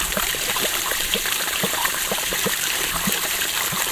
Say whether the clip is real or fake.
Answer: fake